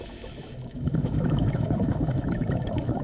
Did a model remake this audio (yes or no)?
yes